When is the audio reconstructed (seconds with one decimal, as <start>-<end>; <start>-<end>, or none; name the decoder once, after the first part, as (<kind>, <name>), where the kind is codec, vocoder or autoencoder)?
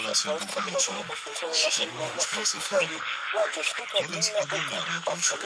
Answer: 0.5-3.8 (autoencoder, DAC-VAE); 4.9-5.5